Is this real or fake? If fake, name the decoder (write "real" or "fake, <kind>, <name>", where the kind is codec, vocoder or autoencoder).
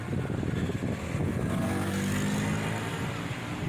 real